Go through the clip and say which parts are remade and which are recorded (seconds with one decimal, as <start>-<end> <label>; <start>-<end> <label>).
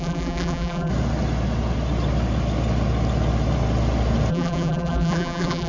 0.0-0.9 remade; 0.9-4.3 recorded; 4.3-5.7 remade